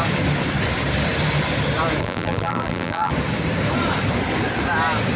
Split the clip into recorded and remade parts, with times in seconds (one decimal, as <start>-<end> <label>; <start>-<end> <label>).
0.0-2.0 recorded; 2.0-3.1 remade; 3.1-5.2 recorded